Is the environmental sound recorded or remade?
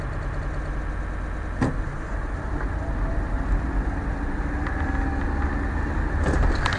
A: recorded